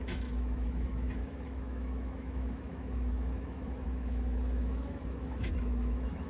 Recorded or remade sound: remade